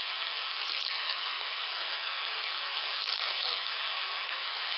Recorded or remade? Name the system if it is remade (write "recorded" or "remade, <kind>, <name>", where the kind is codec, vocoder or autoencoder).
remade, codec, SNAC